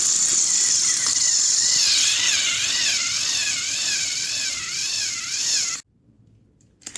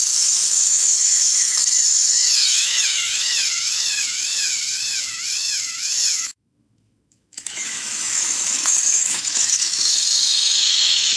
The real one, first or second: first